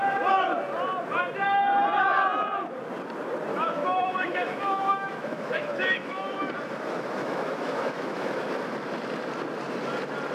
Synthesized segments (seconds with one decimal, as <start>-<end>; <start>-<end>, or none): 3.5-6.5; 7.2-8.4